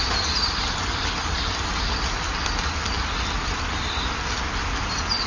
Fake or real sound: real